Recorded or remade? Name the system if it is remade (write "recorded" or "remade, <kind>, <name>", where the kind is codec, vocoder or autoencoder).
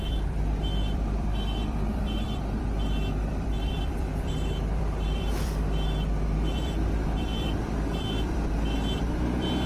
remade, vocoder, BigVGAN v2